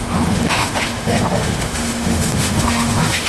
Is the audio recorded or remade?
remade